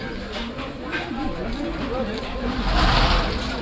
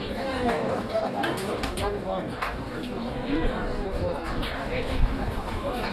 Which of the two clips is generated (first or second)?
second